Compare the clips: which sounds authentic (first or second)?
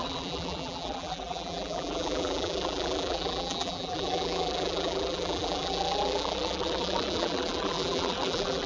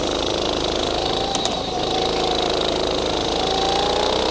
second